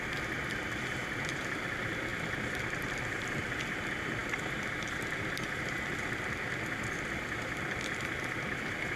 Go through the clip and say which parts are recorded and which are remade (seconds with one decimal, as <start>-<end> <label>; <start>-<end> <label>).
0.0-2.1 remade; 2.1-2.9 recorded; 2.9-9.0 remade